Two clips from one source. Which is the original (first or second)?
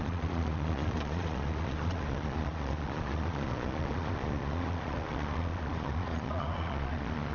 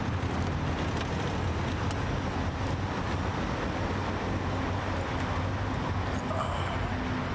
second